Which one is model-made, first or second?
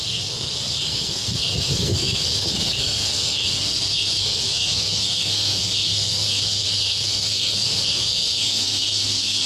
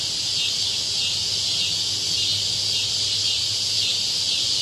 first